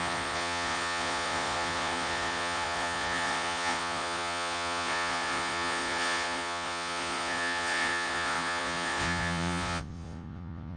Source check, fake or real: fake